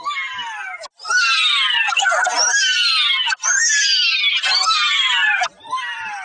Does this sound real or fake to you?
real